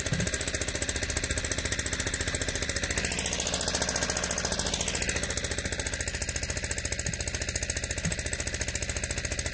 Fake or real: real